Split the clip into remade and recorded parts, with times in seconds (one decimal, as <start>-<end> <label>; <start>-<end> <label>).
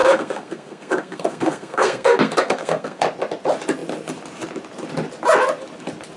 0.0-3.0 remade; 3.0-6.2 recorded